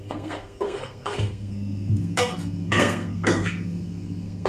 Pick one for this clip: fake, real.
fake